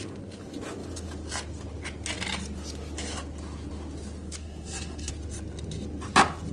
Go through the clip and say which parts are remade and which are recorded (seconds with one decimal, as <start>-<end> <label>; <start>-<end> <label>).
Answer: 0.0-4.4 recorded; 4.4-5.1 remade; 5.1-6.5 recorded